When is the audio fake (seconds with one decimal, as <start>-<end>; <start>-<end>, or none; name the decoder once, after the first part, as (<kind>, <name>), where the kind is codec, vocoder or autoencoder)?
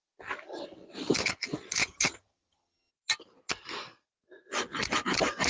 1.8-2.9 (vocoder, HiFi-GAN)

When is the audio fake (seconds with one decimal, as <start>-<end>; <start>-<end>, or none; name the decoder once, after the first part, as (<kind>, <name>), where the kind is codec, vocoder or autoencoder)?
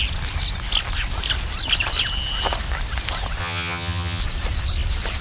3.4-4.2 (vocoder, HiFi-GAN)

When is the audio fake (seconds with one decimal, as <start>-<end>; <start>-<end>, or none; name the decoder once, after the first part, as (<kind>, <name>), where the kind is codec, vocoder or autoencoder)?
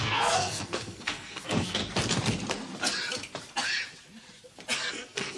0.0-1.8 (codec, SNAC); 4.9-5.4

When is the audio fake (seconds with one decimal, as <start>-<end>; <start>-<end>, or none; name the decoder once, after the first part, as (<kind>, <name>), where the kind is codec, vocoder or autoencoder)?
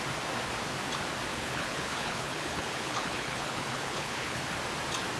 1.3-4.4 (codec, HILCodec)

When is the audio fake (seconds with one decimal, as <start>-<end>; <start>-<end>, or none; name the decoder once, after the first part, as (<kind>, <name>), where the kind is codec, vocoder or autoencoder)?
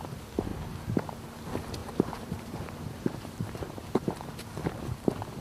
1.8-5.0 (vocoder, BigVGAN v2)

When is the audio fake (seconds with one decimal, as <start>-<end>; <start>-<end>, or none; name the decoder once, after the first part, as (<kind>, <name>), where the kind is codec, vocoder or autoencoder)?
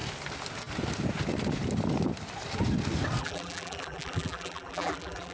3.2-5.3 (vocoder, BigVGAN v2)